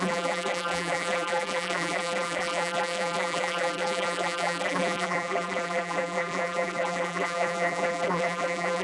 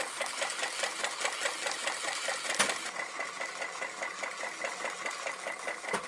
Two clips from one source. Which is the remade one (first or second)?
first